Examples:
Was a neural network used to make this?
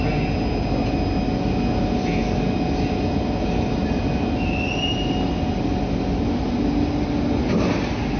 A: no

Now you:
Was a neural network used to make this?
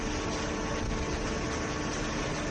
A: no